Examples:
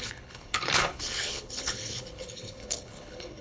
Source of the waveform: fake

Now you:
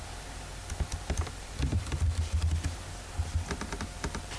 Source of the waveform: real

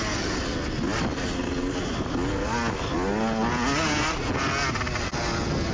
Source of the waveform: real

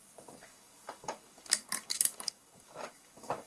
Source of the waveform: fake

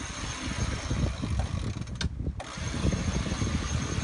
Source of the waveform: real